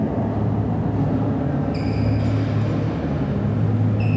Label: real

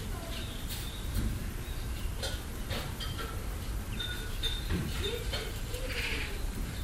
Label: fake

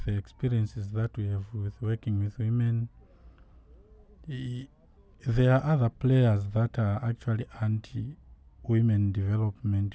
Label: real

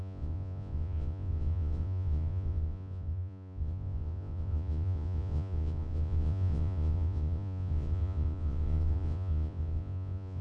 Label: fake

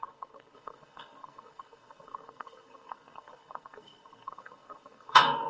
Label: fake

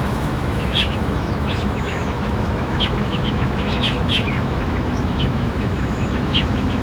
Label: fake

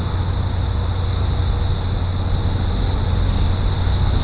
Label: real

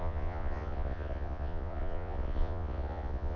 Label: fake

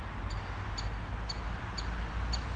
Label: real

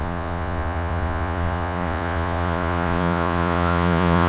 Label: fake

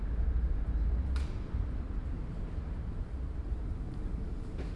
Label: fake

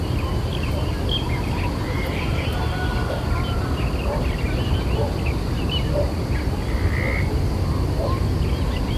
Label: real